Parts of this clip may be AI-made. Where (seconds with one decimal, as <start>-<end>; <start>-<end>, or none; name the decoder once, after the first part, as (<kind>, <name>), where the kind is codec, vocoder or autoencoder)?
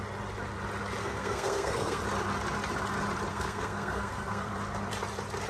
1.0-2.0 (codec, SNAC); 3.3-4.5